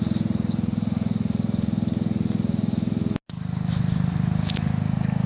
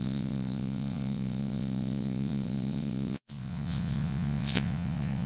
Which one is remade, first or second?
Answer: second